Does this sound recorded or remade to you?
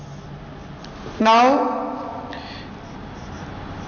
recorded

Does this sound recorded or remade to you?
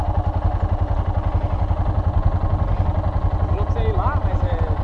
recorded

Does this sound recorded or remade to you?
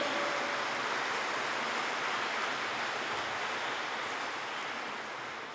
recorded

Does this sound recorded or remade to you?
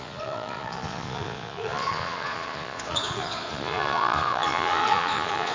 remade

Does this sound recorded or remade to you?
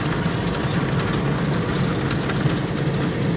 recorded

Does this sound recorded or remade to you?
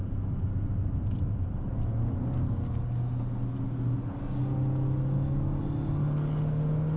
recorded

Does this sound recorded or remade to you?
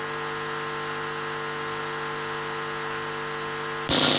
recorded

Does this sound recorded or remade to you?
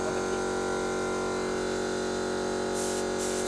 recorded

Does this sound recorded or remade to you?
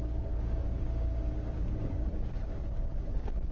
remade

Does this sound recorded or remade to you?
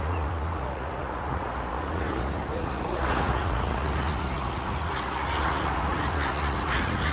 remade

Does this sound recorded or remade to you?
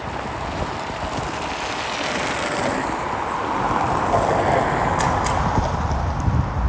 recorded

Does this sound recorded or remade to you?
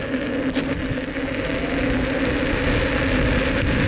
recorded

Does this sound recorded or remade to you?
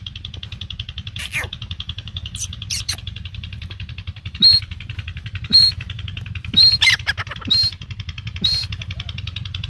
remade